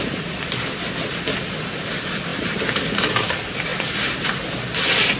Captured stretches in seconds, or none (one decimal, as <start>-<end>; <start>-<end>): 0.0-5.2